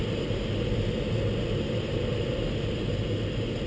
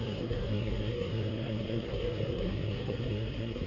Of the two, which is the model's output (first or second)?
second